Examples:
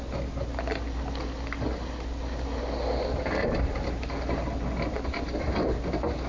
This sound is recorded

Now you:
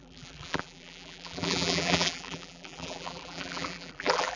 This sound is remade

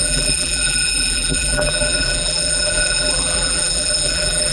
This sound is remade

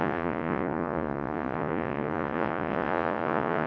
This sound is remade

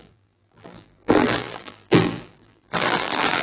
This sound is remade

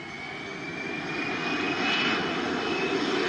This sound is recorded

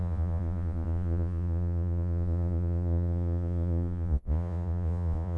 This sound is remade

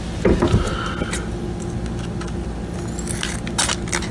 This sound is recorded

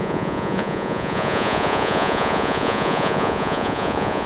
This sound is remade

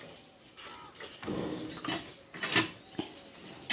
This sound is recorded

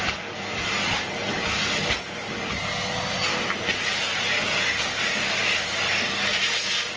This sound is recorded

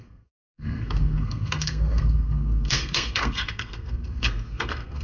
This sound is remade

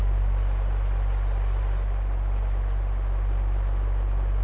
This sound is recorded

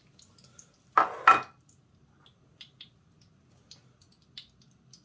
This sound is recorded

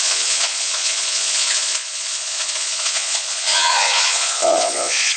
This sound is remade